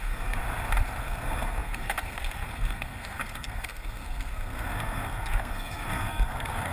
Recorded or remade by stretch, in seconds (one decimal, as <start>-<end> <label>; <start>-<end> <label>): 0.0-0.4 remade; 0.4-1.0 recorded; 1.0-6.7 remade